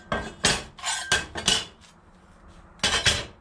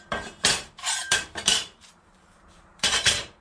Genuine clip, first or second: first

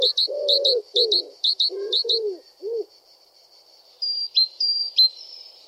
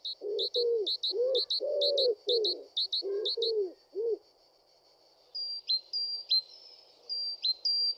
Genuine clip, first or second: second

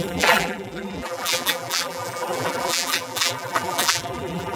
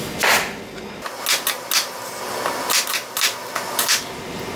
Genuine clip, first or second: second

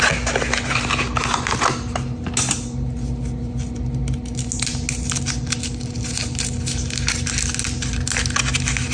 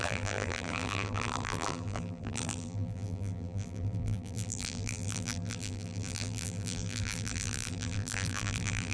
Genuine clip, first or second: first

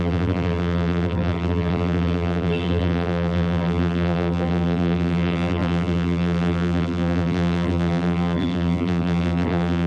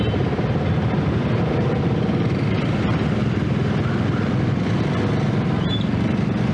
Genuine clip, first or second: second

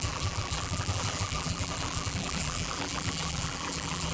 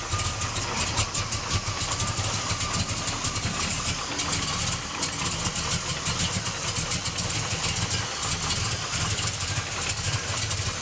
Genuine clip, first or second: second